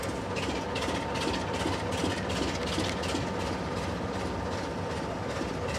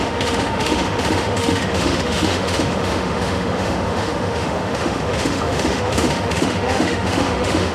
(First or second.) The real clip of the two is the first